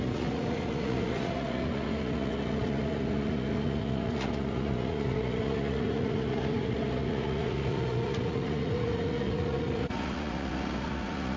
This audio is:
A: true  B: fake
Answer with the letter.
B